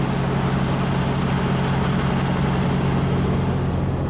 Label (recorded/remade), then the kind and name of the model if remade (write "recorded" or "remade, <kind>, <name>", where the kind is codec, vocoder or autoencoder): recorded